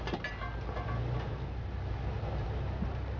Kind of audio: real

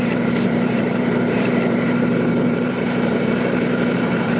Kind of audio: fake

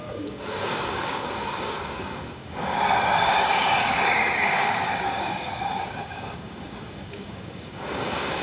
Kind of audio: fake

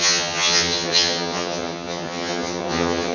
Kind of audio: fake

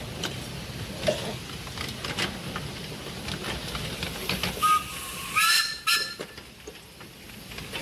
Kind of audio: real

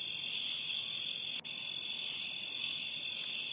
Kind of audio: real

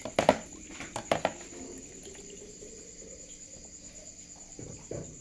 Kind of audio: real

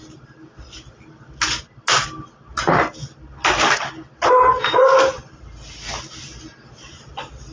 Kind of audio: real